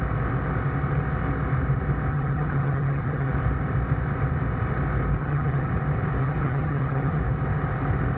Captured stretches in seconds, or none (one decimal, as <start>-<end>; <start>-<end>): 0.0-2.1; 3.3-5.2; 5.7-6.2; 7.2-8.2